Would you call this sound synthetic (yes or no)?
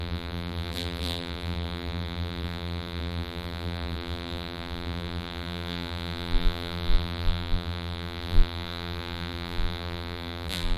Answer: yes